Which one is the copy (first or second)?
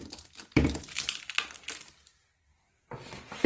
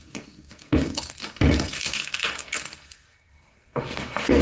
second